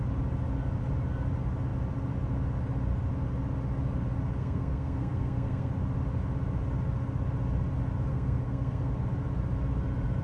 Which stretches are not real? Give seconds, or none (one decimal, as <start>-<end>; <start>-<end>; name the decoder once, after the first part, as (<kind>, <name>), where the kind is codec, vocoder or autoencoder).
4.4-5.7 (codec, SNAC); 8.1-8.9